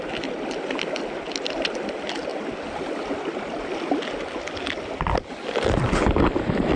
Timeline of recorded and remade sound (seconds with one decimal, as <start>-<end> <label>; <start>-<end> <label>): 0.0-6.8 recorded

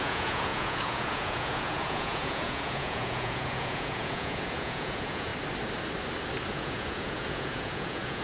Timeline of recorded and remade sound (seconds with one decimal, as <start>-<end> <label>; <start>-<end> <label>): 0.0-5.3 remade; 5.3-6.5 recorded; 6.5-8.2 remade